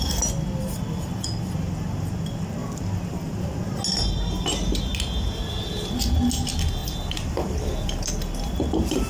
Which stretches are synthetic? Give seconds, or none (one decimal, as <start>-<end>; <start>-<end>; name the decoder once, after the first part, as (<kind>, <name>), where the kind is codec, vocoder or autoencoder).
2.6-3.2 (vocoder, BigVGAN v2); 6.8-7.3